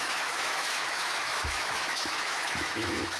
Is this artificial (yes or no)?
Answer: yes